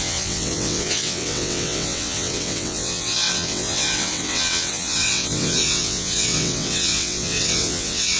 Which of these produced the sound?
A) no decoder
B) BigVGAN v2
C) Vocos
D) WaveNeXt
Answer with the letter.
D